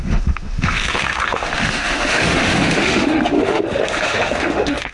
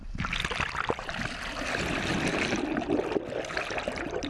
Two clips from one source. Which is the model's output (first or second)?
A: first